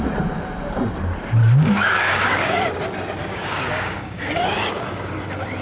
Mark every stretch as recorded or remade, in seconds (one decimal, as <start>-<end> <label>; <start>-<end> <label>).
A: 0.0-1.4 recorded; 1.4-2.7 remade; 2.7-3.2 recorded; 3.2-5.1 remade; 5.1-5.6 recorded